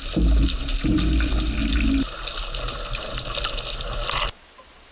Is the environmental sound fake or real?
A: real